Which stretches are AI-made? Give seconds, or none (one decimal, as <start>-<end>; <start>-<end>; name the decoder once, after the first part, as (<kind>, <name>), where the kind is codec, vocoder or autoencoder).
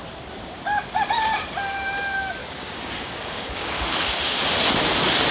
2.4-3.8 (codec, DAC)